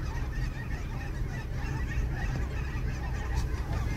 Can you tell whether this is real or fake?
real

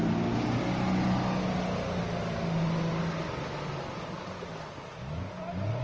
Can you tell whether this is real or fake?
real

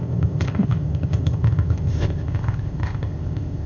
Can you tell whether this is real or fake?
fake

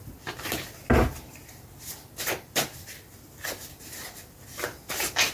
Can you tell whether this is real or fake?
real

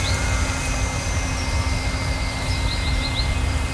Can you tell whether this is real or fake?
real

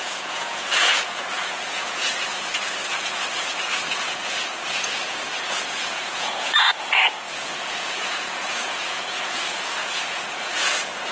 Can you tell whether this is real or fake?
fake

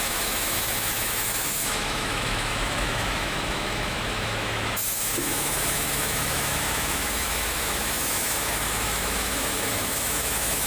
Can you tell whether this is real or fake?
fake